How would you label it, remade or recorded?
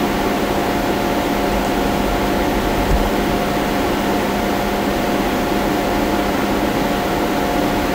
recorded